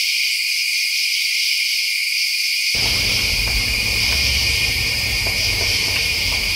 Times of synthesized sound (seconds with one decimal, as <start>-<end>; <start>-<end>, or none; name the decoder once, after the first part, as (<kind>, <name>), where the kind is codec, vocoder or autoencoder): 2.3-6.6 (vocoder, BigVGAN v2)